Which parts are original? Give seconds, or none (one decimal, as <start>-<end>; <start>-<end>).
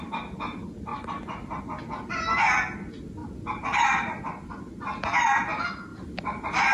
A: 0.0-3.2; 4.2-5.9